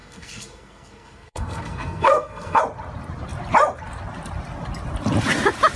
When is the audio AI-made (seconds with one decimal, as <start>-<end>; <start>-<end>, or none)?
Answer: 0.0-2.6

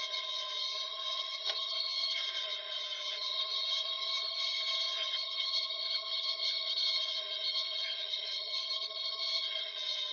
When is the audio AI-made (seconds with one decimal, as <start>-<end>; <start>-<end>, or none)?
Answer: 0.0-10.1

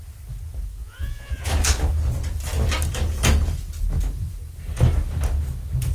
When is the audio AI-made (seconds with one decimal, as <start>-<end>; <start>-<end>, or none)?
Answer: 0.8-1.5